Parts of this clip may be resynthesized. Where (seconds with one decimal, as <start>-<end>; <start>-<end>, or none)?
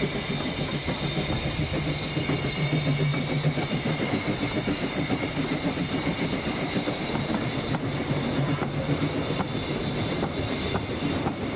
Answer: 3.1-8.3